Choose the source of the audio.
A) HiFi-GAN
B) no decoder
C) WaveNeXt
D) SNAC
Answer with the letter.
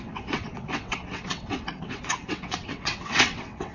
C